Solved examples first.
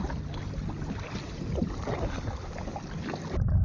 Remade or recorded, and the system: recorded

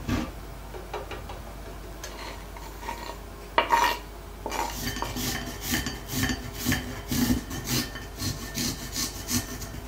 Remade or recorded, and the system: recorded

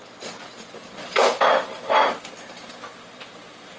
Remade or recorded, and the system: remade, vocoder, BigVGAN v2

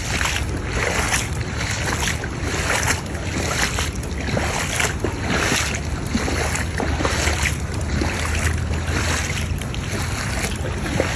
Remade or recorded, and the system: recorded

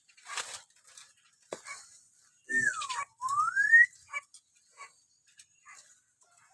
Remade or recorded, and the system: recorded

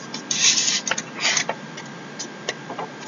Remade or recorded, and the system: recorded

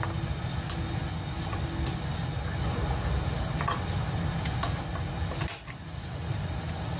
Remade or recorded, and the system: recorded